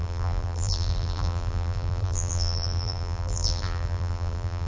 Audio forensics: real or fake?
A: fake